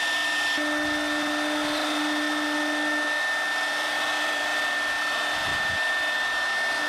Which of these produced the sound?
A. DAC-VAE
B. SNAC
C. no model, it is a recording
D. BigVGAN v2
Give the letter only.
C